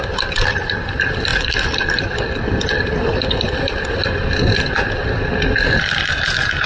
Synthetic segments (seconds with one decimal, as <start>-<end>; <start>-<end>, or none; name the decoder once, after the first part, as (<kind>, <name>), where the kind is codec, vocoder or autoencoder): none